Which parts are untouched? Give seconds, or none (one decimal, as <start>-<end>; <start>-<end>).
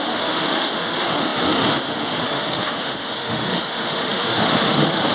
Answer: none